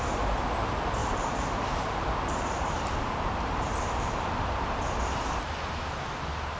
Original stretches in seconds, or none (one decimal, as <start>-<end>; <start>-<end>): 0.0-1.0; 4.3-6.6